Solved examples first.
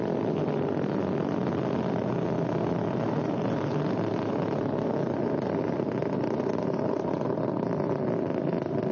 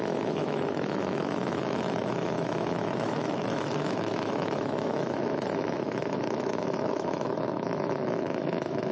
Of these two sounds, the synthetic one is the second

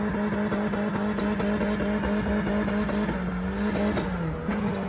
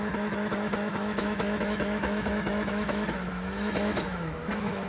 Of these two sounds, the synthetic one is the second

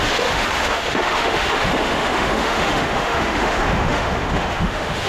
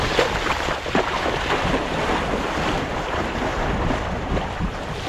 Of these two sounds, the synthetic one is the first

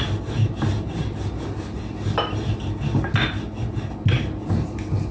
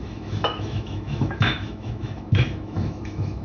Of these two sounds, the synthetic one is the second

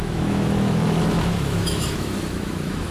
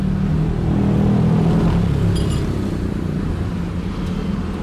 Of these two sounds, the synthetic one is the first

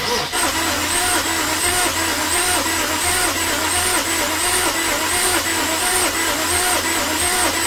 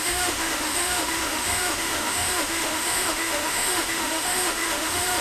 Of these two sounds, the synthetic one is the second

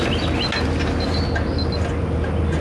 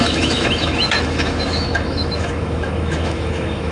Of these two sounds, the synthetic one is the second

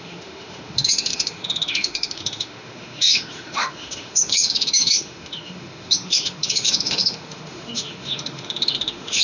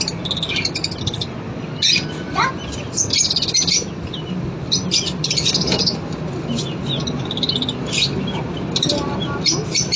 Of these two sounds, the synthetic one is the first